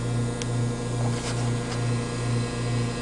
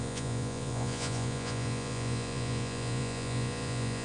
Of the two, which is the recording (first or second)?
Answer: first